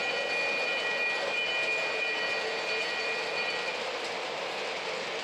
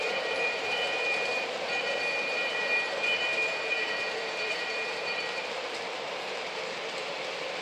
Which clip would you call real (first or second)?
first